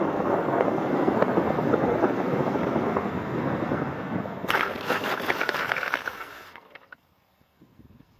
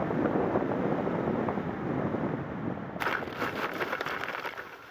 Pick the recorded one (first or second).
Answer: second